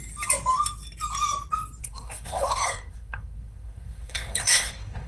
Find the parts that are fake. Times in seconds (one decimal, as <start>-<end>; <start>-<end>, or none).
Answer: 1.8-5.1